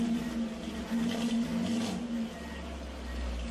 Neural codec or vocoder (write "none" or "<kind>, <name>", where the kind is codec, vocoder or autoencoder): none